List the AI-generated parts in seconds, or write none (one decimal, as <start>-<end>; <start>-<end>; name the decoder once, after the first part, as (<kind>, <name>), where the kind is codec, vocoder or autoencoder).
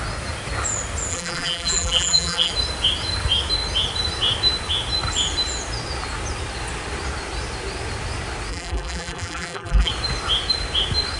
1.1-2.5 (vocoder, BigVGAN v2); 8.5-9.9